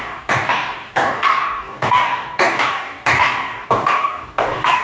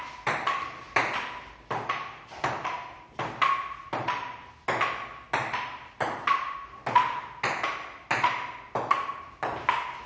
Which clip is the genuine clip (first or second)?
second